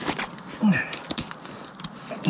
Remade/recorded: recorded